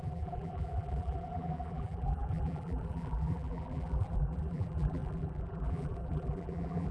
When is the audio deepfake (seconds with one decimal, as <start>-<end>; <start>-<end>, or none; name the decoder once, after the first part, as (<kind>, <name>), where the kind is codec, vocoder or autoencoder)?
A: 0.0-6.9 (vocoder, BigVGAN v2)